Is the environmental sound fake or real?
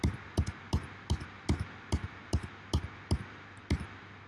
real